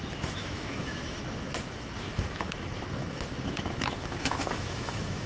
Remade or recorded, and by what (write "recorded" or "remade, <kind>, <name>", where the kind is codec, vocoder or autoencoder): remade, autoencoder, DAC-VAE